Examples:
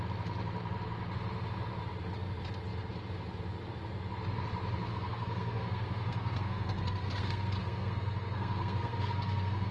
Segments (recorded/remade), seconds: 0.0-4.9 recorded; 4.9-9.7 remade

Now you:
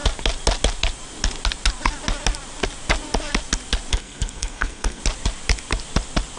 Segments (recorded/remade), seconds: 0.0-3.9 recorded; 3.9-5.0 remade; 5.0-6.4 recorded

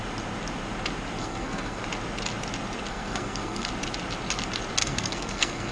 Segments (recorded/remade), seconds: 0.0-1.2 recorded; 1.2-1.8 remade; 1.8-2.9 recorded; 2.9-3.7 remade; 3.7-4.8 recorded; 4.8-5.7 remade